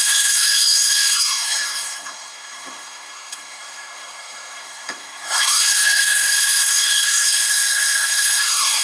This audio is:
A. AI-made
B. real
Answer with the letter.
A